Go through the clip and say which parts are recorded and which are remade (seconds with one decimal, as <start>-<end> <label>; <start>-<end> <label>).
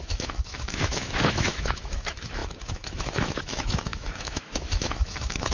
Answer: 0.0-5.5 remade